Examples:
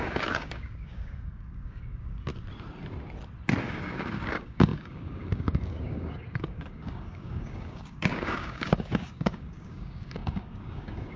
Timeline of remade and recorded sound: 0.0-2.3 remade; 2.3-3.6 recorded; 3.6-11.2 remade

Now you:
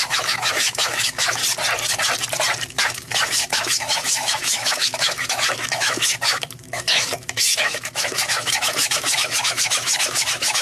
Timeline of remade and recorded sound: 0.0-1.4 remade; 1.4-2.7 recorded; 2.7-10.6 remade

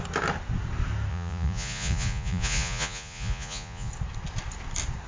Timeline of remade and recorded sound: 0.0-1.1 recorded; 1.1-3.9 remade; 3.9-5.1 recorded